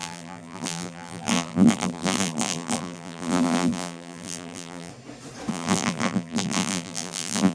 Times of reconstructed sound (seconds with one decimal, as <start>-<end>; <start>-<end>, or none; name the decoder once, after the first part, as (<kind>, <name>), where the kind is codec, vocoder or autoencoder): 0.0-4.9 (vocoder, BigVGAN v2); 5.5-7.5

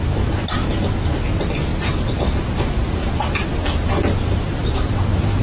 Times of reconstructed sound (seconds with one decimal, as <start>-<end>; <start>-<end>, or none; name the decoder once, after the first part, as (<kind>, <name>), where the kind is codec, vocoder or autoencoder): 1.7-2.4 (vocoder, BigVGAN v2); 4.6-5.4

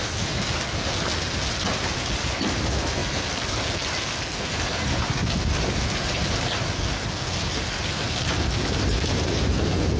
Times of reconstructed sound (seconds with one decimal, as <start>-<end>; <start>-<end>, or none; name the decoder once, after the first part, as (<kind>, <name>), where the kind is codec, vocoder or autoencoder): 3.0-3.6 (vocoder, BigVGAN v2)

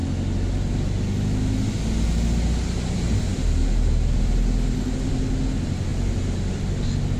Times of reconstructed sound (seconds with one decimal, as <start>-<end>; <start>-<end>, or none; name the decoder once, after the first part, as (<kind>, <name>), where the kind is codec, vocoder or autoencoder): none

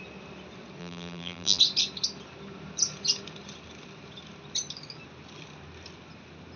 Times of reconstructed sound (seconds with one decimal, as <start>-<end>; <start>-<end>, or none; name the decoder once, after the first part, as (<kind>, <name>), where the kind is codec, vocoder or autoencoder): 0.8-1.6 (vocoder, BigVGAN v2)

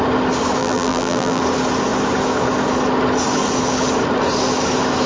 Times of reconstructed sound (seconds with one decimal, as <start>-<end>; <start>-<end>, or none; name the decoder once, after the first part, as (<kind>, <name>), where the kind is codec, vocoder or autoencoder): 0.6-1.4 (vocoder, BigVGAN v2)